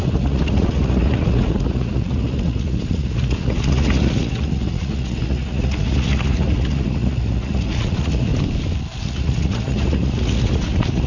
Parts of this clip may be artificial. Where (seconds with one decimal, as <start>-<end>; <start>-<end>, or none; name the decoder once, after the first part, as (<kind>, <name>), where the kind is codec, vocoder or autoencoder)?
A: 0.0-8.3 (vocoder, Vocos); 9.0-11.1